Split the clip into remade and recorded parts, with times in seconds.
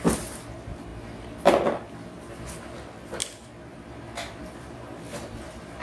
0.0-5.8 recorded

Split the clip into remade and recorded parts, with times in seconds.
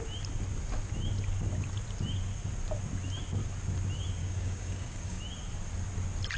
0.0-4.2 recorded; 4.2-5.2 remade; 5.2-6.4 recorded